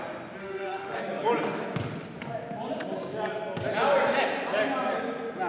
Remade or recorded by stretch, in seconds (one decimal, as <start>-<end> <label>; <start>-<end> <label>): 0.0-0.4 recorded; 0.4-1.0 remade; 1.0-5.5 recorded